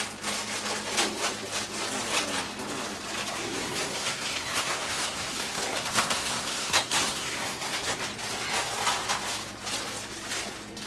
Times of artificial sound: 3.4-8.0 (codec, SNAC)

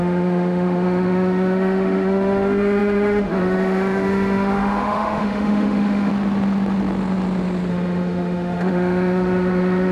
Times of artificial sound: 0.0-6.1 (autoencoder, DAC-VAE); 7.7-9.9

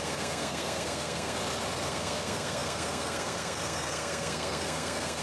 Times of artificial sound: 0.0-1.4 (codec, SNAC); 1.9-5.2

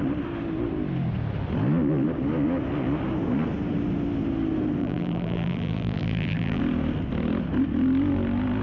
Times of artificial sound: 4.8-6.6 (vocoder, BigVGAN v2)

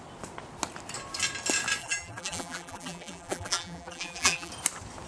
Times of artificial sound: 1.8-4.5 (vocoder, BigVGAN v2)

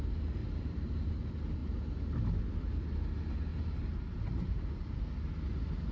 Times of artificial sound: 0.4-1.1 (vocoder, BigVGAN v2); 3.5-4.7

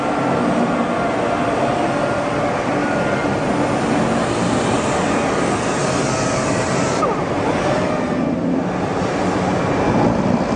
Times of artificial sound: 2.8-3.9 (vocoder, BigVGAN v2); 5.8-6.6